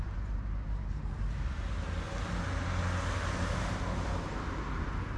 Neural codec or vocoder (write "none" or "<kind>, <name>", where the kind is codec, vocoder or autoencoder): none